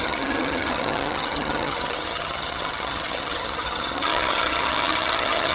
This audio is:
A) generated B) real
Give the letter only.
A